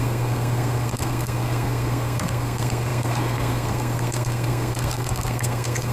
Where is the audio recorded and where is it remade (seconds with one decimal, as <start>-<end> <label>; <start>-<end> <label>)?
0.0-5.9 remade